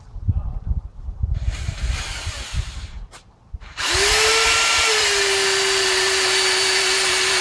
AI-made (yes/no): yes